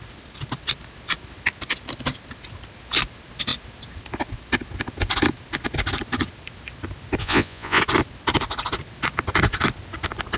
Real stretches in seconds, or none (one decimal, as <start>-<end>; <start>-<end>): 0.0-7.2; 7.8-10.4